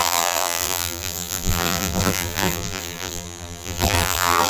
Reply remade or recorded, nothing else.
remade